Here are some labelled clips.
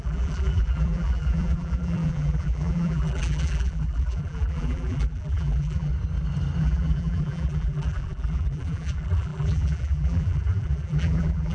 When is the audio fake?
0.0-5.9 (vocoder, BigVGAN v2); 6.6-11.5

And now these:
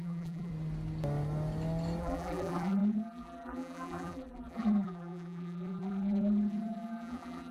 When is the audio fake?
0.0-0.5 (vocoder, BigVGAN v2); 2.0-7.5

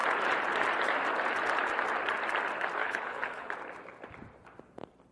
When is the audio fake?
2.8-3.5 (codec, HILCodec)